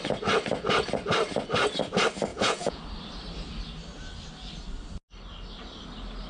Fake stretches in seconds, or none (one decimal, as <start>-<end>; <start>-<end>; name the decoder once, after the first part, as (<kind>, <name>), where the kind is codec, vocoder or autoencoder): 2.3-2.8 (vocoder, Vocos)